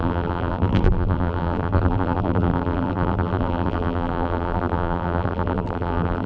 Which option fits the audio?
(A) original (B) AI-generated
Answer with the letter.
B